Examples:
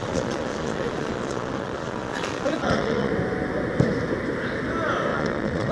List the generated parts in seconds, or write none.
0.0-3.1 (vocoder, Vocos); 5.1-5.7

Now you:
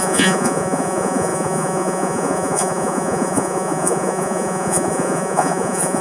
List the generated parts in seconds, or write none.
0.0-6.0 (vocoder, Vocos)

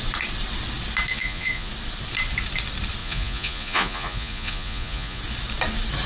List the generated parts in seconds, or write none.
1.1-1.7 (vocoder, Vocos); 3.0-5.2

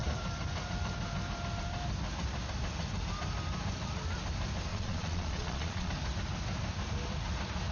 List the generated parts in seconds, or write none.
4.7-5.9 (vocoder, Vocos)

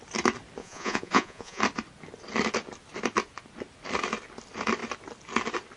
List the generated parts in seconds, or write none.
0.6-1.6 (vocoder, Vocos)

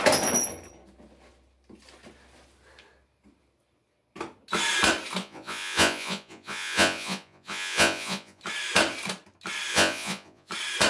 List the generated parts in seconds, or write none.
5.2-8.4 (vocoder, Vocos); 9.7-10.5